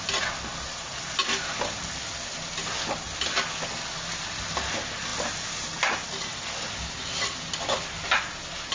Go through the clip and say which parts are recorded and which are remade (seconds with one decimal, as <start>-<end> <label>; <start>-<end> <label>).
0.0-8.7 recorded